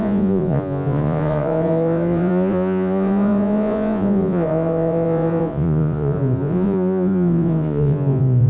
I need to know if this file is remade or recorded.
remade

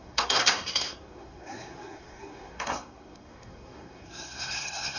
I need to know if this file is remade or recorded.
remade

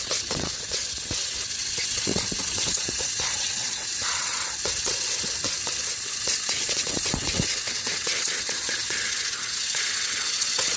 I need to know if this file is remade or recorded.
remade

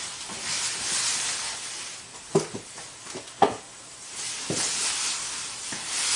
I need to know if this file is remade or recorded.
recorded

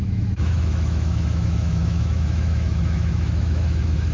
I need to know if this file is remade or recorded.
remade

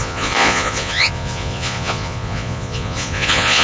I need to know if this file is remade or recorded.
remade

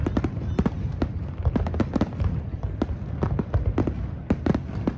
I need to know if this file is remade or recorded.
recorded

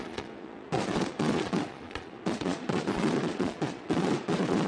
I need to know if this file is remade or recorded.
remade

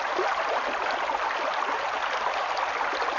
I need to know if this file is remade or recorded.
recorded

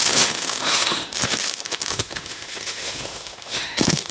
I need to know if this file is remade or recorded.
remade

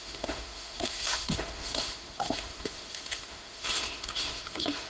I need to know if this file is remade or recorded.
remade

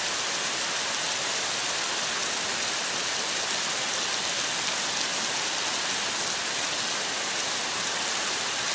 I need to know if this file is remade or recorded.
recorded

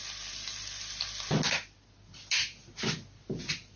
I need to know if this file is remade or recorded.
recorded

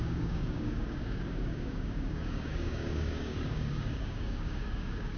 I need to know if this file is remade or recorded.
remade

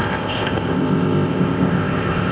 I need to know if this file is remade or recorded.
remade